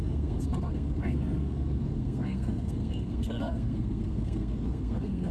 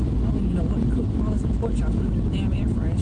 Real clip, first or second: second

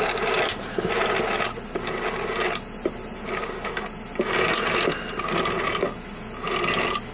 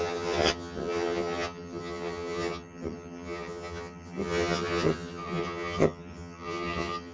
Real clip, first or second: first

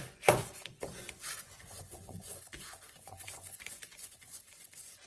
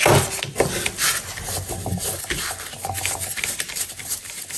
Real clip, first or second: second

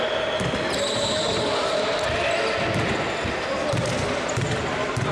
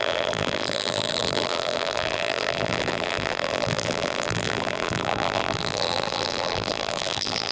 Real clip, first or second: first